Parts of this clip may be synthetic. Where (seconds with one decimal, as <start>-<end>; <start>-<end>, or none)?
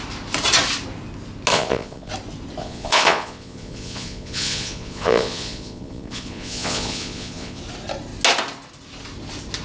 1.5-2.1; 2.6-7.6